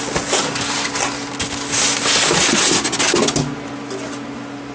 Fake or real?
real